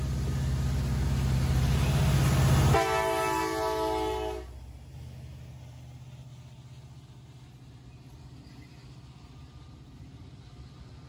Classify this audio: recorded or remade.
recorded